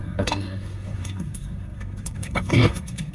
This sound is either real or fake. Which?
fake